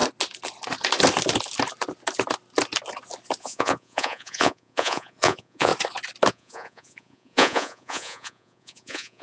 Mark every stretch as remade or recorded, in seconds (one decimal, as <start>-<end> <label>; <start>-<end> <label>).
0.0-3.4 recorded; 3.4-5.7 remade; 5.7-6.3 recorded; 6.3-9.2 remade